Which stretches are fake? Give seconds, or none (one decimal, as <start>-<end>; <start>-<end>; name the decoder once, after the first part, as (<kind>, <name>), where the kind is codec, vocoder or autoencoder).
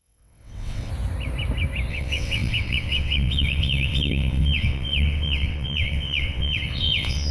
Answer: 0.0-0.9 (vocoder, WaveNeXt); 1.9-7.3